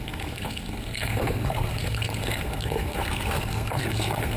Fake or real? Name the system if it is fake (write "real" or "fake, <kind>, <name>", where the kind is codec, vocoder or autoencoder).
fake, codec, SNAC